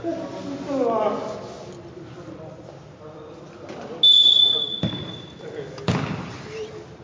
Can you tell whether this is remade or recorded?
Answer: recorded